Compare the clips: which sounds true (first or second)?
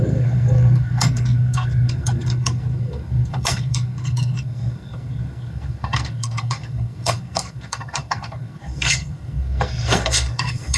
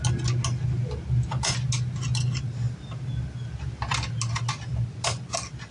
second